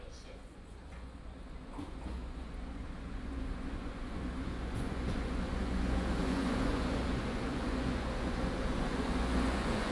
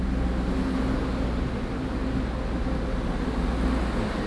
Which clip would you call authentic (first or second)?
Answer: second